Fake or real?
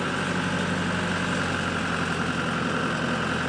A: real